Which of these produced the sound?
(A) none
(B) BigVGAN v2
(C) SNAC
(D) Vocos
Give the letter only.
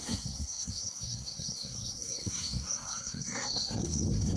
C